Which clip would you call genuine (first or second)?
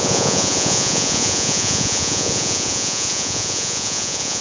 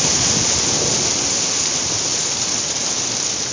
second